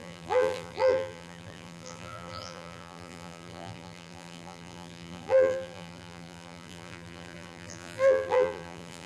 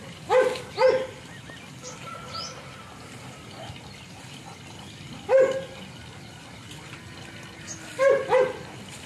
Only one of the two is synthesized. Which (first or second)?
first